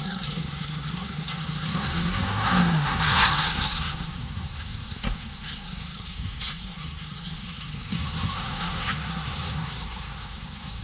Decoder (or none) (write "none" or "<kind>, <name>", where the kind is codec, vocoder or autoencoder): codec, SNAC